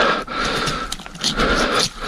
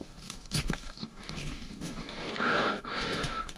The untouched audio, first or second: first